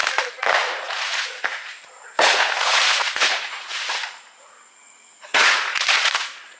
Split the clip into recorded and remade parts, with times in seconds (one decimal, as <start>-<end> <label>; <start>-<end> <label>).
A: 0.0-0.8 recorded; 0.8-6.6 remade